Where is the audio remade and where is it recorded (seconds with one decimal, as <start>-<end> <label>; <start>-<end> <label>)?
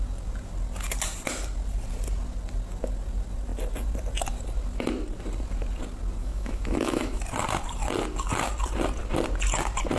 0.0-6.2 recorded; 6.2-7.2 remade; 7.2-10.0 recorded